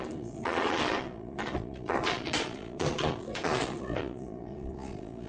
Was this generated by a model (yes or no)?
yes